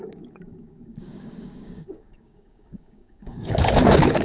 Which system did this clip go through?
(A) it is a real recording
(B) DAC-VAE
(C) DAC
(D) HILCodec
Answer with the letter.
C